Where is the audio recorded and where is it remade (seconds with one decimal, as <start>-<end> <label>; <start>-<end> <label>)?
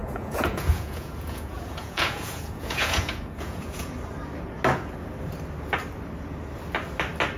0.0-3.9 remade; 3.9-7.4 recorded